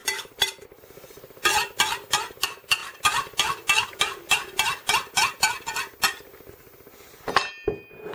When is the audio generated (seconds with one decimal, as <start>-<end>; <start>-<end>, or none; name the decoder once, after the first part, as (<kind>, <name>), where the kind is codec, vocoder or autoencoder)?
0.0-0.8 (vocoder, BigVGAN v2)